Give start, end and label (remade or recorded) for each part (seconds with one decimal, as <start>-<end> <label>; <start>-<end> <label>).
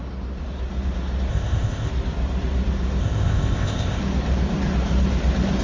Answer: 0.0-1.3 recorded; 1.3-1.9 remade; 1.9-3.0 recorded; 3.0-4.0 remade; 4.0-5.6 recorded